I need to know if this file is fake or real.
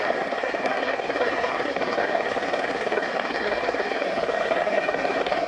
fake